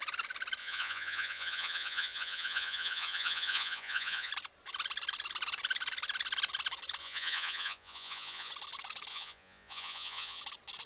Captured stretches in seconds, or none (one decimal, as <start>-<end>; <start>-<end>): 0.0-0.6; 4.3-7.0; 8.5-9.1; 10.4-10.9